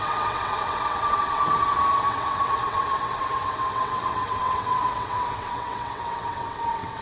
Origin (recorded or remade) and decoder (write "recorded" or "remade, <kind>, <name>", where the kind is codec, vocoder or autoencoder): remade, vocoder, WaveNeXt